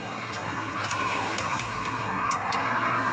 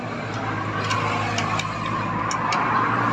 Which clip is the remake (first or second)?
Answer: first